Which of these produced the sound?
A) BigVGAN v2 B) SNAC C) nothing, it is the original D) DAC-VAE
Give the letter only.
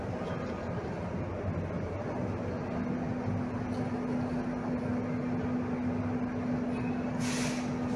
C